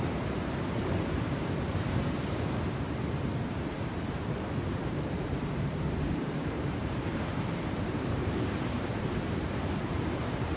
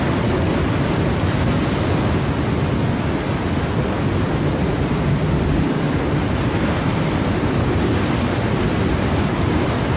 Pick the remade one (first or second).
first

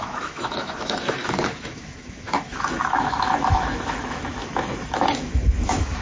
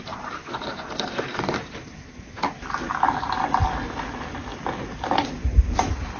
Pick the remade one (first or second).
first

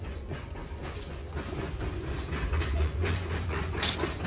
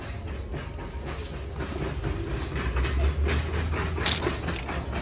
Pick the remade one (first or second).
first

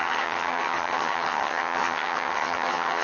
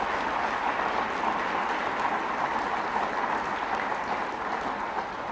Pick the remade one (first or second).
first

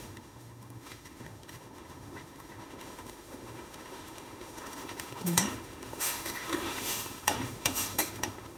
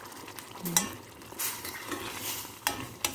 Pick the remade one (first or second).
first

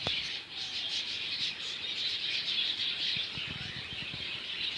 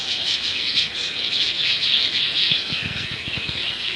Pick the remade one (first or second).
second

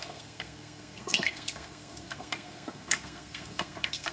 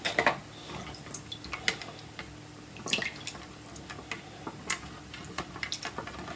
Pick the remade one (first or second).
first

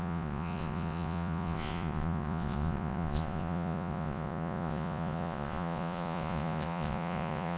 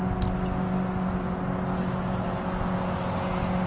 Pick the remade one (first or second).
first